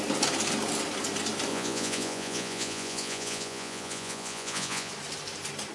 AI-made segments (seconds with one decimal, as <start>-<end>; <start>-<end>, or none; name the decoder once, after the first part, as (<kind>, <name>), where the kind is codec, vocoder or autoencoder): 1.5-4.9 (vocoder, Vocos)

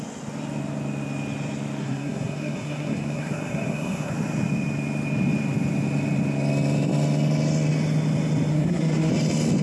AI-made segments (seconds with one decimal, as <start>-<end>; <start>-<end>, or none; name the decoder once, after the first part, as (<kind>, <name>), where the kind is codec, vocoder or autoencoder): 1.8-4.1 (codec, SNAC); 8.5-9.1